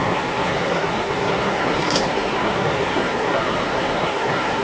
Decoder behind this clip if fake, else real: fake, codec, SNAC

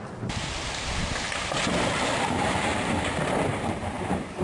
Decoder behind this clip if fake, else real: fake, vocoder, BigVGAN v2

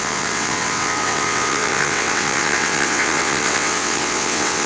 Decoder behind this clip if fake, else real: fake, vocoder, WaveNeXt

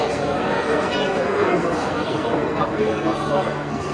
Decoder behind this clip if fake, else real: fake, codec, SNAC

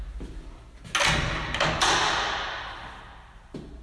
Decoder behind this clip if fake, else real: real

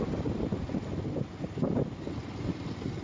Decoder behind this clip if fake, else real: real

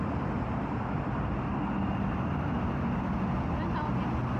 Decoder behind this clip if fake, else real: real